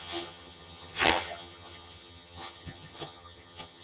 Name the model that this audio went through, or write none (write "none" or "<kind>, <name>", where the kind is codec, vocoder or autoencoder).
vocoder, HiFi-GAN